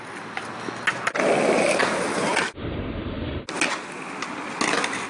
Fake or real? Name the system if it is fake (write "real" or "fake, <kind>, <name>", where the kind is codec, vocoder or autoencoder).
real